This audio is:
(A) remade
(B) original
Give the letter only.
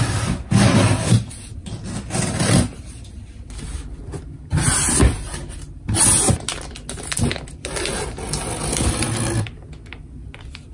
B